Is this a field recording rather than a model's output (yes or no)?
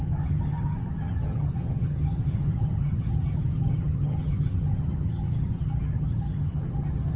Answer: no